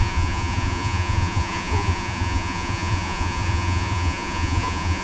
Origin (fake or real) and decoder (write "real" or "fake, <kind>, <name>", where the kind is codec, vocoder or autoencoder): fake, vocoder, Vocos